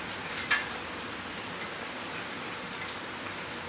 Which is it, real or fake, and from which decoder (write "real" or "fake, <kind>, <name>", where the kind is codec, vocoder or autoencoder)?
fake, vocoder, BigVGAN v2